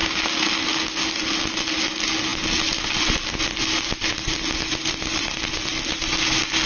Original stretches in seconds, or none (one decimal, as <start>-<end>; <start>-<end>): 0.0-6.7